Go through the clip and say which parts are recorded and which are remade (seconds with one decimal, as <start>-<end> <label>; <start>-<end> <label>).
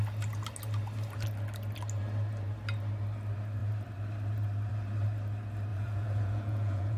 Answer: 0.0-5.7 recorded; 5.7-7.0 remade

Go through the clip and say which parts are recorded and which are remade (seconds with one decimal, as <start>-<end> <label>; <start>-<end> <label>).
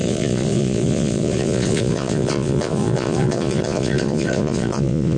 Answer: 0.0-5.2 remade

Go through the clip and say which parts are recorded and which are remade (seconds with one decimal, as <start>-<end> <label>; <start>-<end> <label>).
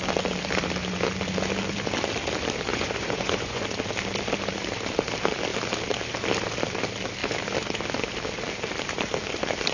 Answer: 0.0-2.7 recorded; 2.7-3.6 remade; 3.6-9.7 recorded